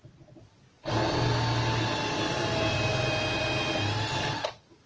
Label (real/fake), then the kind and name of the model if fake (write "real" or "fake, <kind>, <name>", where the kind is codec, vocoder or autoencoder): real